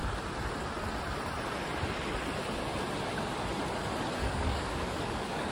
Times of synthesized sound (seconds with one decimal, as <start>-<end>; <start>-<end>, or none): 4.2-5.5